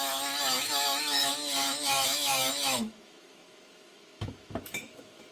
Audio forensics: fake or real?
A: fake